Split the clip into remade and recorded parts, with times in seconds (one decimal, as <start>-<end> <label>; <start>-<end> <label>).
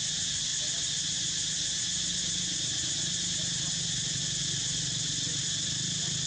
0.0-6.3 recorded